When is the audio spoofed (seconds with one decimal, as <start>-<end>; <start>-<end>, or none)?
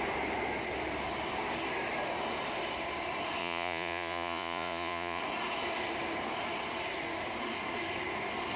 3.4-5.2